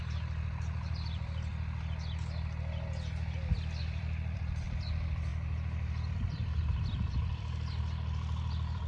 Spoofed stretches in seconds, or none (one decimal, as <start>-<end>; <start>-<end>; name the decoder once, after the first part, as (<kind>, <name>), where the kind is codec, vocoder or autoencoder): 0.0-1.5 (vocoder, BigVGAN v2); 3.8-5.3; 6.1-8.9

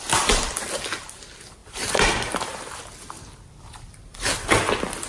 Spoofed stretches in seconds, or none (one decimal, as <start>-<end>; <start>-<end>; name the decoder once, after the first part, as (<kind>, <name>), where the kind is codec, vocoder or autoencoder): 1.6-2.8 (vocoder, BigVGAN v2); 3.9-4.6

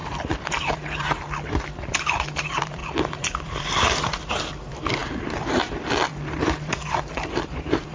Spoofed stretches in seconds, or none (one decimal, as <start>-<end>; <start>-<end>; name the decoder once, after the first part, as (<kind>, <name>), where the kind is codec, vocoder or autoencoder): 0.0-2.8 (vocoder, BigVGAN v2); 3.4-7.9

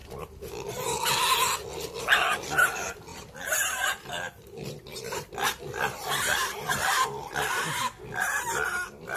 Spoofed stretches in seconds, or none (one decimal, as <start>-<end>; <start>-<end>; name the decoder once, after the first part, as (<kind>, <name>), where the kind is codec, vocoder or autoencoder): 3.1-7.7 (vocoder, BigVGAN v2)

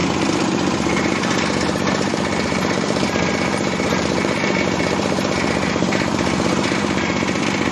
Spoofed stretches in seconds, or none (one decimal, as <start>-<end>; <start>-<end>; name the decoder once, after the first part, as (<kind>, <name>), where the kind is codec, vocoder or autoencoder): 0.0-7.7 (vocoder, BigVGAN v2)